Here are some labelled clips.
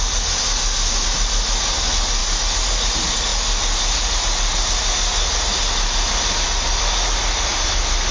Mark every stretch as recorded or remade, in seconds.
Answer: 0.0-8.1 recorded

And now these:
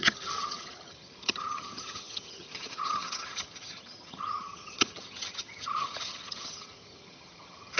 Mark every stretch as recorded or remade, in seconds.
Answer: 0.0-7.8 remade

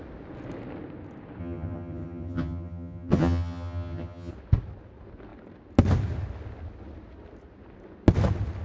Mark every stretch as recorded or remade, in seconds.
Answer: 0.0-1.4 recorded; 1.4-4.3 remade; 4.3-8.6 recorded

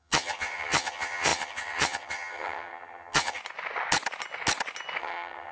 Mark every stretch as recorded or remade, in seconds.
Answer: 0.0-3.4 remade; 3.4-5.0 recorded; 5.0-5.5 remade

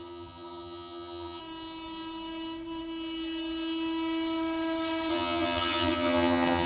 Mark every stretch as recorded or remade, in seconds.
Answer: 0.0-1.4 remade; 1.4-5.1 recorded; 5.1-6.7 remade